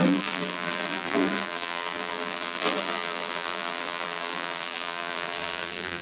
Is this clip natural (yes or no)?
no